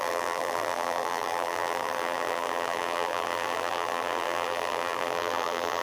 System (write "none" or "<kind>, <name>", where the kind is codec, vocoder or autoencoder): vocoder, BigVGAN v2